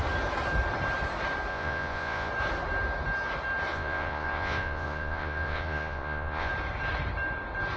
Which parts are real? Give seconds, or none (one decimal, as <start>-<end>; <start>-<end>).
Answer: 0.0-1.5; 2.3-3.7; 6.5-7.8